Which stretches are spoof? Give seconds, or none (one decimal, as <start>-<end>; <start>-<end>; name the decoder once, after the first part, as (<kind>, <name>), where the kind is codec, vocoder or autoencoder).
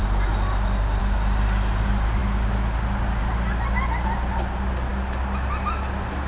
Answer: none